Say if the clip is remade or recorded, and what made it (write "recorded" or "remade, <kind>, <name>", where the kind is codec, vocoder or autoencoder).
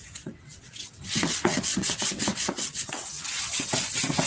remade, vocoder, WaveNeXt